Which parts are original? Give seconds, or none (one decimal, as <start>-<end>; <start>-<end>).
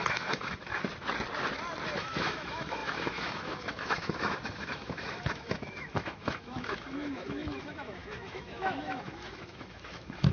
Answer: 0.7-2.0